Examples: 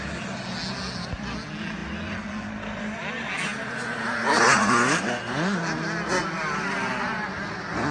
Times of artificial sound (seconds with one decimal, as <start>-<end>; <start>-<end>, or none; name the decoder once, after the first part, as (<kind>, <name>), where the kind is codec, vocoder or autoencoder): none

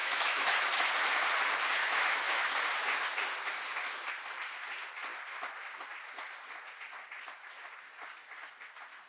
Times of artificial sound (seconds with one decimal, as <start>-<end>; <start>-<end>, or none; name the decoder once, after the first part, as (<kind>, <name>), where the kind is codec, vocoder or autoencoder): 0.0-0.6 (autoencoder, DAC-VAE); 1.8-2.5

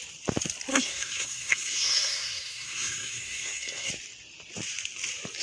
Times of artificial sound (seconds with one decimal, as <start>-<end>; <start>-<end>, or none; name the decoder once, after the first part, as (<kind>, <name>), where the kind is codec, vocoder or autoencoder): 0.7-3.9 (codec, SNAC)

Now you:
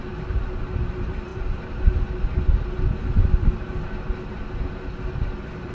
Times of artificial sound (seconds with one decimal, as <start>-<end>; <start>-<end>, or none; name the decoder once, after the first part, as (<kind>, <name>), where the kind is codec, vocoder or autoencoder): none